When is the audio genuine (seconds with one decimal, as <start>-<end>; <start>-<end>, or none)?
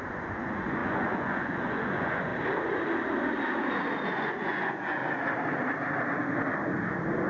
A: 2.3-4.1; 5.0-7.3